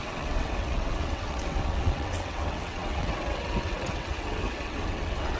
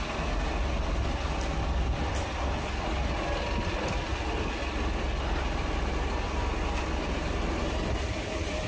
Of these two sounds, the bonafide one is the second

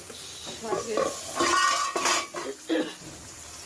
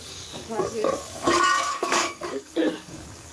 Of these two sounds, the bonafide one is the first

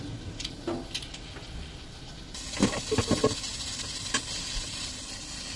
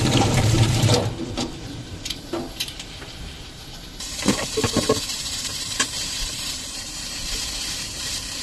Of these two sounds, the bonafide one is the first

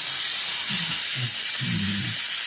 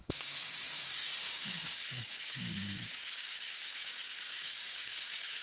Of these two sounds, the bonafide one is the first